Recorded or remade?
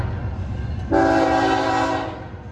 recorded